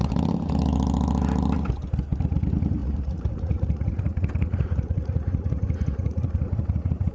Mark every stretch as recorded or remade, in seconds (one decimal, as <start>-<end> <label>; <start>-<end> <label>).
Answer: 0.0-2.8 recorded; 2.8-7.1 remade